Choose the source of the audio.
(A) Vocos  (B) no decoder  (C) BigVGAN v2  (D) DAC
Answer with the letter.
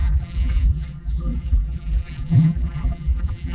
C